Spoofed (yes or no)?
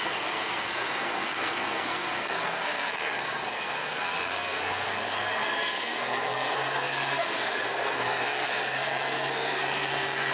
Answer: yes